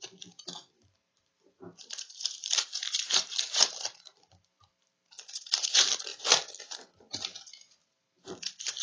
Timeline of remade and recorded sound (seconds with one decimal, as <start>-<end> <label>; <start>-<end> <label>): 0.0-6.1 remade; 6.1-6.6 recorded; 6.6-8.8 remade